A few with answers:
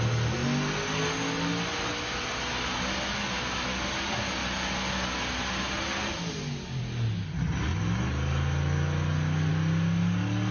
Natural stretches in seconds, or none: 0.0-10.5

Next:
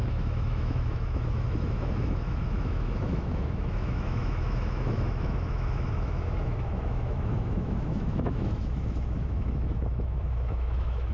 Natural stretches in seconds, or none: none

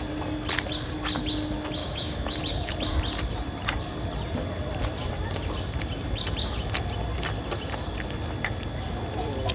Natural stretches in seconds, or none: 0.0-1.8; 2.4-9.5

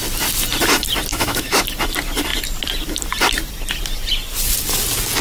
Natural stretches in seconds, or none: 0.0-1.1; 1.6-5.2